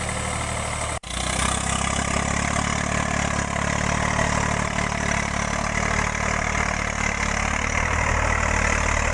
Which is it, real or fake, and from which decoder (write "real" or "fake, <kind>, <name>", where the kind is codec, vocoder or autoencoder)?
real